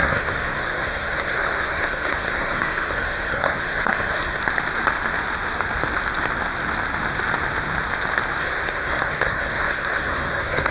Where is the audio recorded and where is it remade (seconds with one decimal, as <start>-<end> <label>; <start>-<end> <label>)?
0.0-4.4 remade; 4.4-8.4 recorded; 8.4-10.7 remade